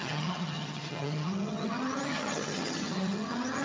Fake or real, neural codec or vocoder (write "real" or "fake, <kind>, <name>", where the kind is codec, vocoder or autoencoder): fake, vocoder, HiFi-GAN